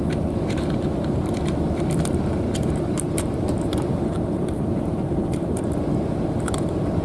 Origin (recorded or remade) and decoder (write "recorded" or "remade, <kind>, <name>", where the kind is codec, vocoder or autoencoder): remade, vocoder, BigVGAN v2